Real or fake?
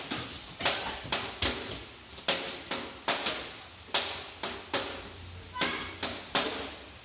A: real